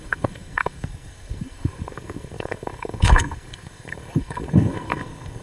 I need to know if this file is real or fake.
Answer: fake